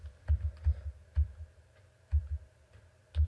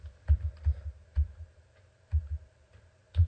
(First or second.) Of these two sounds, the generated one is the second